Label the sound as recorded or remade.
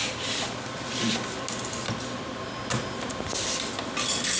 recorded